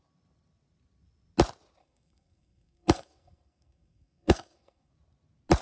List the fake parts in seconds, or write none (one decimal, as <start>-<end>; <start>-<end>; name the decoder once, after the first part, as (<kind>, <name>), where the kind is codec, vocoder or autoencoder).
1.8-4.9 (codec, SNAC)